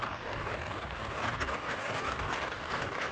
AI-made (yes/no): yes